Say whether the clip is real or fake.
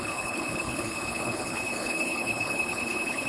fake